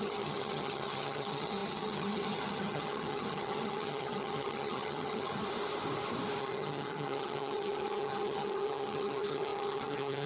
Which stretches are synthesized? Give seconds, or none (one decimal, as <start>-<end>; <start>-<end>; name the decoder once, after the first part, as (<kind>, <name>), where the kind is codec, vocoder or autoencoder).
0.0-5.4 (vocoder, HiFi-GAN); 6.4-10.3